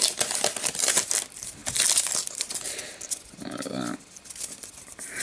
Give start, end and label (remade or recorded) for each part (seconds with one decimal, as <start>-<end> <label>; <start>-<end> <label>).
0.0-5.2 recorded